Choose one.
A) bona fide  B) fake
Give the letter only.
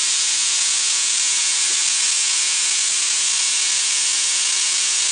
A